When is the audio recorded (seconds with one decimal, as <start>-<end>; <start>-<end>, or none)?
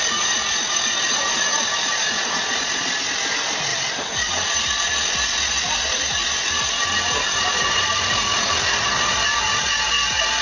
0.0-3.7; 5.8-7.6; 9.3-10.4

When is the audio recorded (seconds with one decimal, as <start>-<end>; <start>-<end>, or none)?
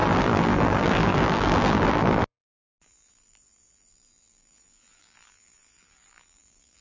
none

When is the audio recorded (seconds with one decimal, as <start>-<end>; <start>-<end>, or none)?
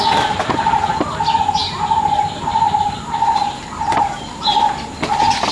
0.0-1.6; 4.9-5.5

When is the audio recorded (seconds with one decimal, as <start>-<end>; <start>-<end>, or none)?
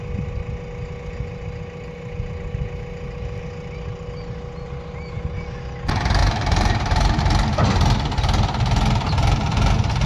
0.0-6.2; 7.2-10.1